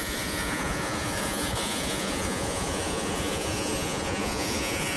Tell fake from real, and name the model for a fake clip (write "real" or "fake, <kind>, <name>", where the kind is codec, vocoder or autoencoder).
fake, vocoder, Vocos